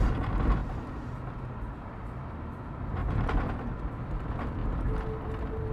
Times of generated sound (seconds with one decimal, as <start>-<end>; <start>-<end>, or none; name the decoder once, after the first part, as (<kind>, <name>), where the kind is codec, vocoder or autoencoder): 3.0-3.5 (vocoder, BigVGAN v2)